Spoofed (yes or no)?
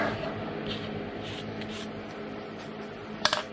no